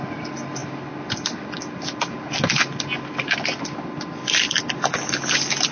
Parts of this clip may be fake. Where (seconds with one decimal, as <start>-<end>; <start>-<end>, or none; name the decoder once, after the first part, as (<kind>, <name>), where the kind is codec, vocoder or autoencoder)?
none